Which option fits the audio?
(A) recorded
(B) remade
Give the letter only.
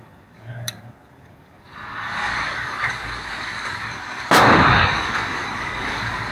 B